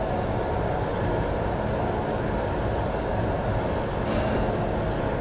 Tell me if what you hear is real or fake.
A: real